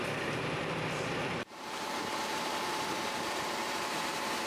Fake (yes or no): yes